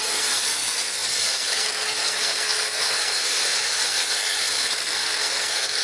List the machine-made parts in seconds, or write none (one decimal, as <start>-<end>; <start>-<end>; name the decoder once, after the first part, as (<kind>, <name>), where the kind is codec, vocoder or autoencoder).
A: 0.0-5.8 (codec, SNAC)

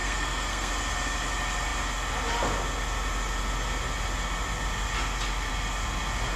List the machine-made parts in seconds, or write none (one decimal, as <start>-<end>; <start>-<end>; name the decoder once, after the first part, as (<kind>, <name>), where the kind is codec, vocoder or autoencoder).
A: 0.0-0.7 (codec, SNAC)

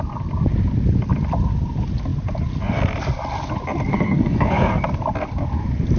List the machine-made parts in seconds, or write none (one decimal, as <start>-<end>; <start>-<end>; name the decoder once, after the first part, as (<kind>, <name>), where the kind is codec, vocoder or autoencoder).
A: 3.9-4.8 (codec, SNAC)

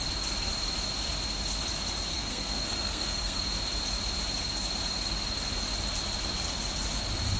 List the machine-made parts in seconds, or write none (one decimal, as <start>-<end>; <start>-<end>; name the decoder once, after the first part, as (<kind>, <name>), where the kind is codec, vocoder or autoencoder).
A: 2.1-3.4 (codec, SNAC)

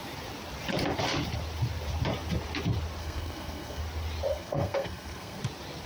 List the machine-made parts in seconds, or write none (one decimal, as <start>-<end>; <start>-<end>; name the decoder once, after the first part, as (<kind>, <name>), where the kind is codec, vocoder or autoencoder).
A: 3.0-3.8 (codec, SNAC); 4.3-5.4

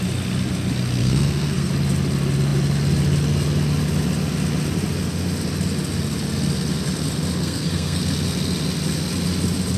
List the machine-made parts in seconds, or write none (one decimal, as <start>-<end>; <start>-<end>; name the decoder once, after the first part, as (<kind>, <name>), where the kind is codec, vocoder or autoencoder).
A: 1.0-1.7 (codec, SNAC); 7.4-8.0